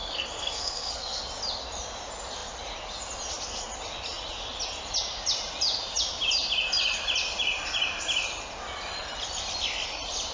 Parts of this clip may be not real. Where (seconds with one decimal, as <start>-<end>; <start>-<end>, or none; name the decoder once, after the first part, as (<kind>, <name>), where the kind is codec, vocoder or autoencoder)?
0.0-1.2 (codec, SNAC)